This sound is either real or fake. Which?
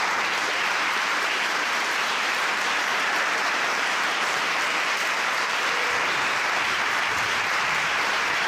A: fake